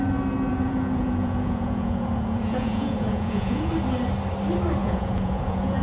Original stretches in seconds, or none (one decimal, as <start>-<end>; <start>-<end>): 0.0-0.5; 3.7-4.8